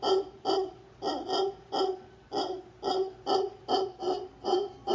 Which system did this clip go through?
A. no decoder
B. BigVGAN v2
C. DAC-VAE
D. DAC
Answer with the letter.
A